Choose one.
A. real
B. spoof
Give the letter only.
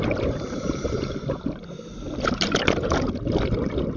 B